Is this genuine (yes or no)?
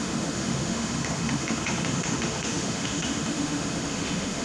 no